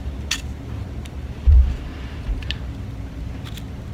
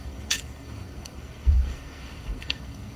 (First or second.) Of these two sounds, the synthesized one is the second